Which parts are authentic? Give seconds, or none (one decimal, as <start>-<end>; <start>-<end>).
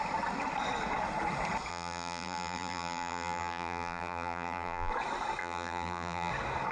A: 0.0-1.7; 4.9-5.4; 6.3-6.7